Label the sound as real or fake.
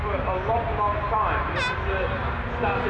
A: real